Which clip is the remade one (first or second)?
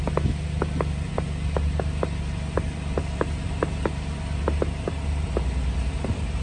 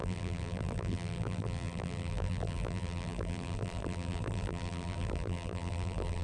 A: second